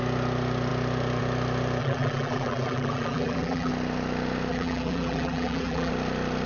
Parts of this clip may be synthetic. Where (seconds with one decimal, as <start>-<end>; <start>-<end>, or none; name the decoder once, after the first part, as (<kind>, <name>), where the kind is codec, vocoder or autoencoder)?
1.8-3.7 (vocoder, BigVGAN v2); 4.5-5.9